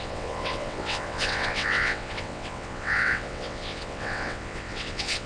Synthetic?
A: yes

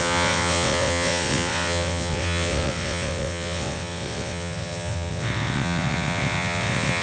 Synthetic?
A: yes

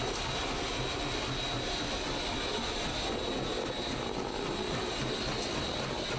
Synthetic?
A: no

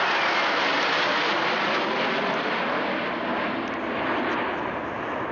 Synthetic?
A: no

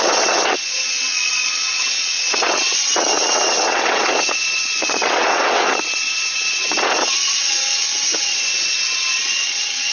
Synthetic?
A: yes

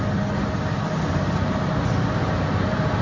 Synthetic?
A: no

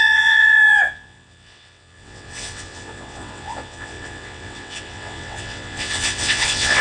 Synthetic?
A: yes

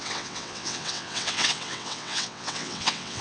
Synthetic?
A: yes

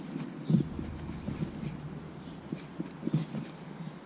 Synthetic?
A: no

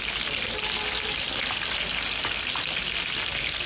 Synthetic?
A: no